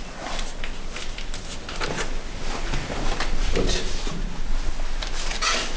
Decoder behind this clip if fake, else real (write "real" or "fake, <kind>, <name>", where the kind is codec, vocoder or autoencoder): real